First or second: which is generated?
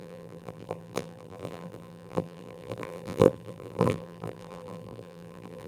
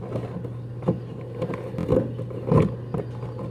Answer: first